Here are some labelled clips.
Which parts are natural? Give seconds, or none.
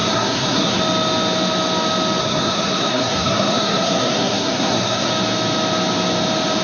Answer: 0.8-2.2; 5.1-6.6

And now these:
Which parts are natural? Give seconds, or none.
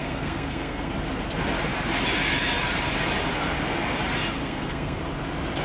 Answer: 0.9-4.4; 5.0-5.6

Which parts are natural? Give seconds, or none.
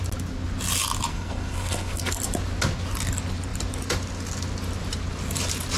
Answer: 0.0-1.1; 2.2-5.8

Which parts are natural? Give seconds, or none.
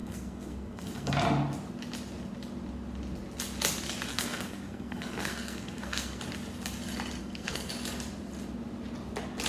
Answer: 1.1-4.1; 6.2-7.2; 7.7-9.5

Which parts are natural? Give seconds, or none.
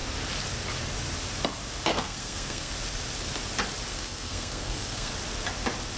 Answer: 0.0-1.9; 2.7-3.9; 5.1-6.0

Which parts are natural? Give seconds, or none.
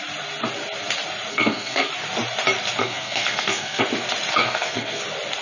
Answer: 0.0-1.3; 1.9-2.8; 3.8-4.4; 5.0-5.4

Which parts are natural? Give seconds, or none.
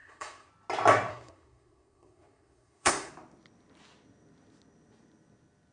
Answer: 0.5-1.1; 3.1-5.7